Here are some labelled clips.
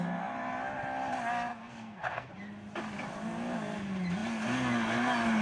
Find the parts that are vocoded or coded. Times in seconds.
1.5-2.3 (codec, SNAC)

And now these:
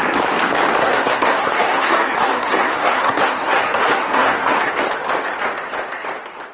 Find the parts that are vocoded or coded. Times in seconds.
0.8-4.7 (codec, SNAC)

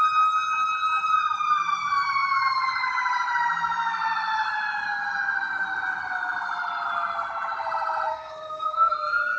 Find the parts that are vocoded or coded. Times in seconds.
8.1-8.9 (codec, SNAC)